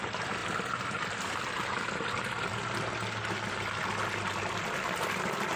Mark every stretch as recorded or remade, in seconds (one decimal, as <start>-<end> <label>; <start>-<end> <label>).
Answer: 0.0-5.6 recorded